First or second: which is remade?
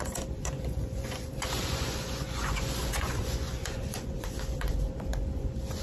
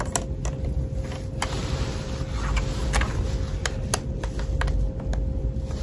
first